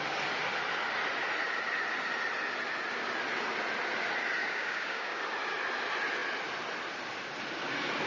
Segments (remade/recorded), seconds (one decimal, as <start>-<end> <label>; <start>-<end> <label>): 0.0-4.4 recorded; 4.4-5.2 remade; 5.2-8.1 recorded